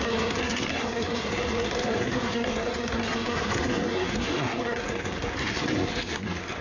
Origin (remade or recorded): remade